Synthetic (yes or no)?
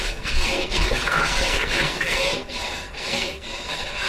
yes